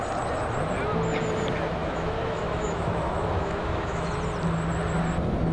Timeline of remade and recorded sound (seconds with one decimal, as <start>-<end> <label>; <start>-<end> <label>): 0.0-1.8 recorded; 1.8-4.1 remade; 4.1-5.5 recorded

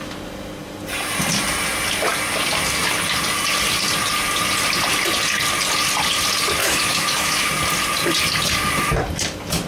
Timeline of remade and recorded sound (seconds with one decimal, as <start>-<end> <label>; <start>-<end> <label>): 0.0-6.6 recorded; 6.6-7.5 remade; 7.5-9.7 recorded